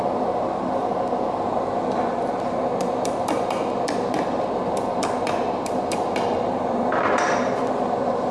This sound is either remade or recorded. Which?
remade